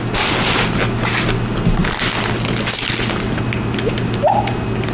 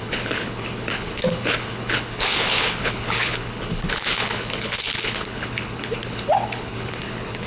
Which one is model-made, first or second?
second